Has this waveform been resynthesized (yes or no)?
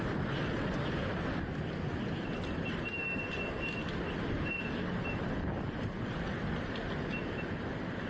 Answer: no